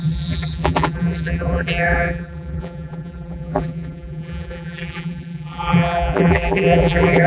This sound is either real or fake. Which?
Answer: fake